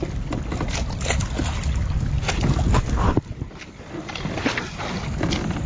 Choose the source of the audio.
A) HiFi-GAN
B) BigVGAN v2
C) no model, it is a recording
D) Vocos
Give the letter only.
C